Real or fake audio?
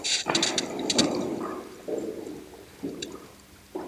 real